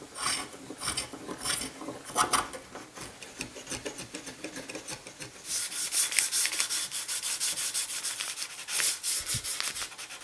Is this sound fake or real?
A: real